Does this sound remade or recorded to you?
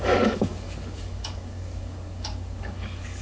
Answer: remade